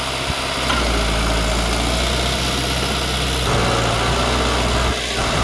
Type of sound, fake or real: real